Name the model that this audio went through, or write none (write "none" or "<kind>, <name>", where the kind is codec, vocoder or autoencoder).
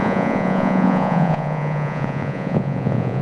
vocoder, Vocos